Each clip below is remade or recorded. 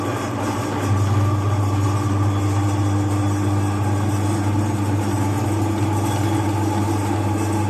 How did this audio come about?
recorded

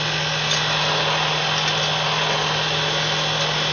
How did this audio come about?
recorded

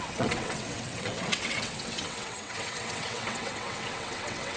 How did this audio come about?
remade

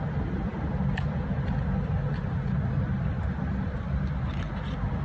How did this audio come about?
recorded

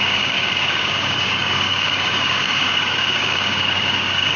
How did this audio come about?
remade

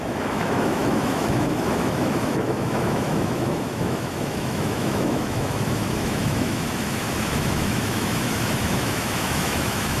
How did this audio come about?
remade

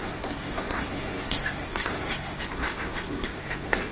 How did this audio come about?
remade